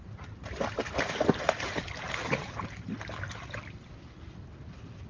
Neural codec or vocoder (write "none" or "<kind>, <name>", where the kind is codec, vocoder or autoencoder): none